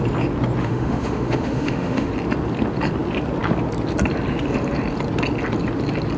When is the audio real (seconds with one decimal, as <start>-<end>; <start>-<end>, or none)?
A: 0.0-0.6; 2.1-6.2